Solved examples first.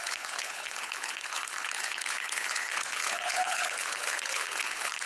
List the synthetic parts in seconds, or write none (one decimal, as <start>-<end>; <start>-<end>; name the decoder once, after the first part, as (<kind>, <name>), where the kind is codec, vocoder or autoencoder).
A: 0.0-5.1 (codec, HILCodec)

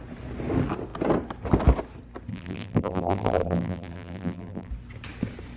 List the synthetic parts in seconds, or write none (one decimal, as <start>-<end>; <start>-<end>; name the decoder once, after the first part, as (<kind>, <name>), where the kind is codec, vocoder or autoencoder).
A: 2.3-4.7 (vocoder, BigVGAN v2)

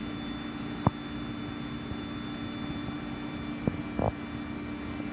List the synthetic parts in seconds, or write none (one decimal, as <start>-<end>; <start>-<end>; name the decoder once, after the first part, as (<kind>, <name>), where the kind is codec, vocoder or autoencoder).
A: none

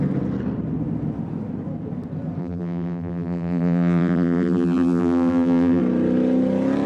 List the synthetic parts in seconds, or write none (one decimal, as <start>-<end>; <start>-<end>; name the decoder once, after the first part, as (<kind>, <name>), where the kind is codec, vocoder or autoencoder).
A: 2.4-5.8 (vocoder, BigVGAN v2)

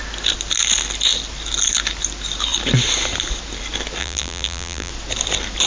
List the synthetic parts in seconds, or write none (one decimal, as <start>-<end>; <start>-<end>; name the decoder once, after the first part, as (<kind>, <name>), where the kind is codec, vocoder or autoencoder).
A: 4.0-4.9 (vocoder, BigVGAN v2)